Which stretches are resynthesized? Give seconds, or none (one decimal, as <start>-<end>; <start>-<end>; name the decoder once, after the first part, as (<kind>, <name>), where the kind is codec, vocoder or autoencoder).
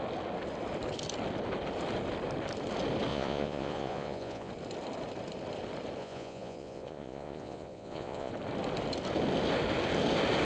3.1-4.5 (vocoder, Vocos); 6.0-8.3